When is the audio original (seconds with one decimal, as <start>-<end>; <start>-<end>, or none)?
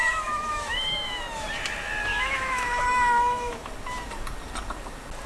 1.2-2.1; 3.7-5.3